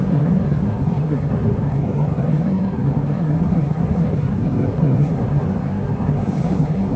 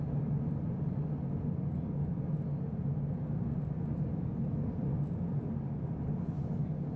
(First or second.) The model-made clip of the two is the first